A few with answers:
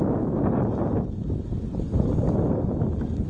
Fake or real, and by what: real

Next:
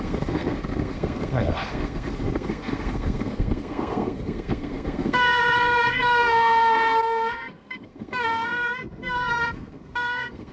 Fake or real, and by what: fake, codec, SNAC